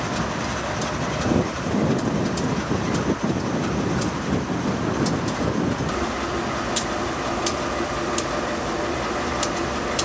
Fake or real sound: real